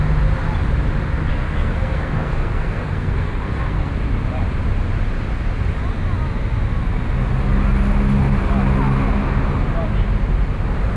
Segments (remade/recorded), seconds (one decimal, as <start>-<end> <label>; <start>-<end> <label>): 0.0-1.3 recorded; 1.3-3.9 remade; 3.9-11.0 recorded